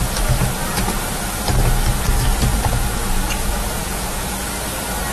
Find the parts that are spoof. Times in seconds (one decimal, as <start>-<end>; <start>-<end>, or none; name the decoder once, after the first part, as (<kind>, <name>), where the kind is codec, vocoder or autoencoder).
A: 2.5-4.3 (vocoder, Vocos)